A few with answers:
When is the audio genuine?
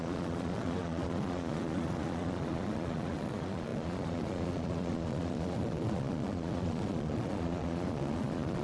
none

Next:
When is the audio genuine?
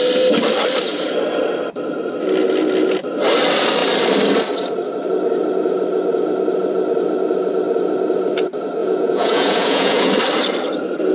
0.0-8.8; 10.1-11.1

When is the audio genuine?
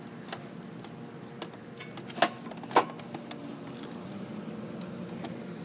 0.0-5.6